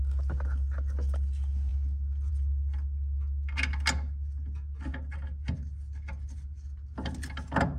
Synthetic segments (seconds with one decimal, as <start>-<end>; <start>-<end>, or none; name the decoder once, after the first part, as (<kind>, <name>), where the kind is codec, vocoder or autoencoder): none